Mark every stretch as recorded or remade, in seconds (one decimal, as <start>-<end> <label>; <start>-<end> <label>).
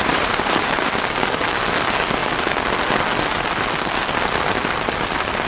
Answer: 0.0-0.8 remade; 0.8-5.5 recorded